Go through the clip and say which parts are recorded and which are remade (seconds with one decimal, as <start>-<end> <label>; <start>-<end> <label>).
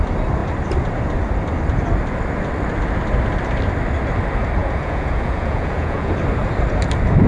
0.0-4.6 recorded; 4.6-6.1 remade; 6.1-7.3 recorded